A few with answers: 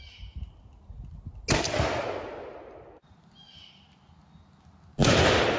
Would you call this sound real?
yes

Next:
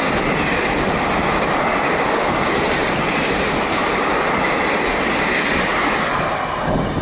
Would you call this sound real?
yes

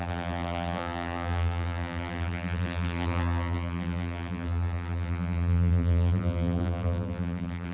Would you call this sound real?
no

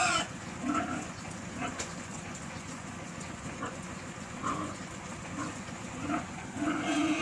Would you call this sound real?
no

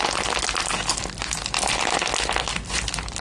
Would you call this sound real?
yes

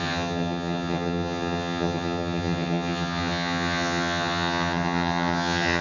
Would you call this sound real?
no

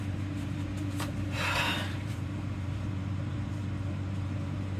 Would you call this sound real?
no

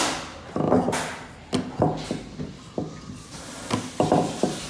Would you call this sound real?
yes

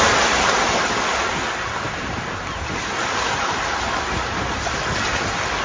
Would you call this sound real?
yes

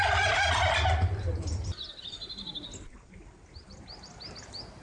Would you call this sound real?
yes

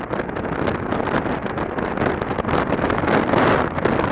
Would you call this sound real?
yes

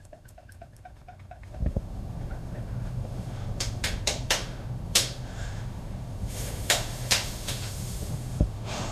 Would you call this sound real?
no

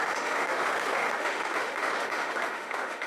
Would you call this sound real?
no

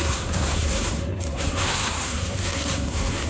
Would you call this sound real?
no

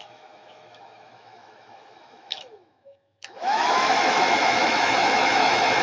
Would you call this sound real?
no